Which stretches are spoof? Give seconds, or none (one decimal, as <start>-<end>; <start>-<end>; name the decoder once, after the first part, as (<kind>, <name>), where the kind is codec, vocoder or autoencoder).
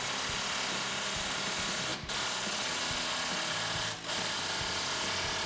none